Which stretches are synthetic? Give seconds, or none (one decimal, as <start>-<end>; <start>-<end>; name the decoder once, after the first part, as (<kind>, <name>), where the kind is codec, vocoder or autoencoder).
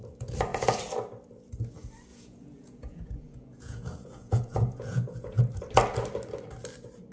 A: 2.1-5.4 (vocoder, Vocos)